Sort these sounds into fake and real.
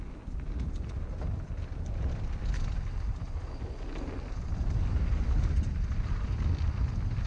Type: real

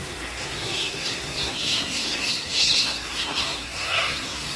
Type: fake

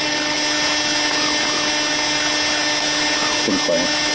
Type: real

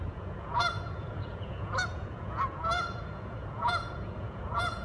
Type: fake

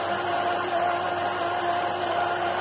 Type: real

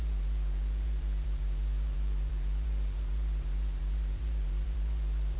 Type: fake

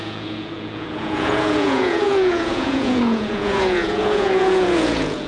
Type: fake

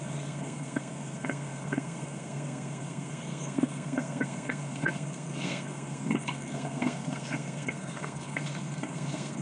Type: fake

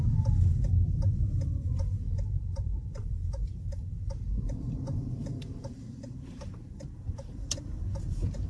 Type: fake